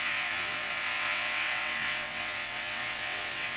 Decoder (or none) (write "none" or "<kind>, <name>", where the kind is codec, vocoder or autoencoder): vocoder, WaveNeXt